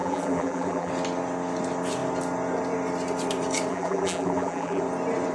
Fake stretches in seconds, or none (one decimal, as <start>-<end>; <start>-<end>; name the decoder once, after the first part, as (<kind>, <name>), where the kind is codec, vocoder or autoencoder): 0.0-0.9 (vocoder, BigVGAN v2); 3.7-4.8